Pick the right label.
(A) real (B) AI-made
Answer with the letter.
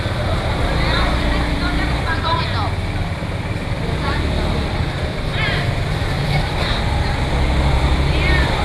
B